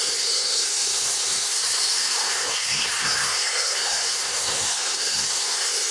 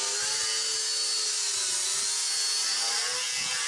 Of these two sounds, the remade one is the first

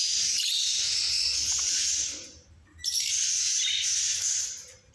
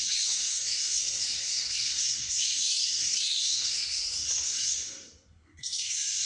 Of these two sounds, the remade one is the second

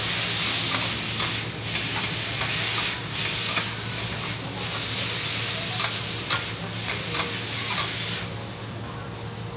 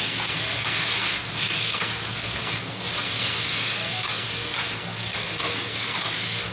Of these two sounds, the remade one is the second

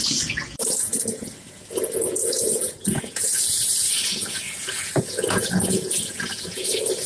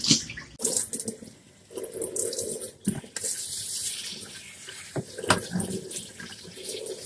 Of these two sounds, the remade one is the first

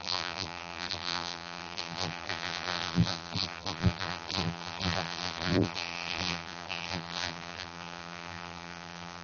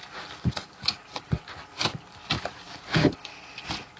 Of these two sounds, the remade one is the first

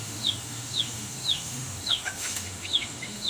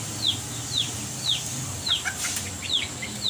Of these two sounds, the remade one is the first